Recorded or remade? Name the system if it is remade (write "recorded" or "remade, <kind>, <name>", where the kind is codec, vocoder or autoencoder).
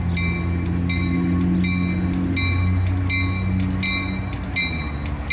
recorded